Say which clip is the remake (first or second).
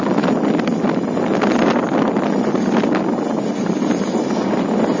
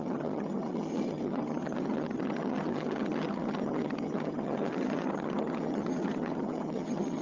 second